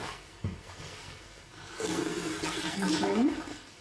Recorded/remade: remade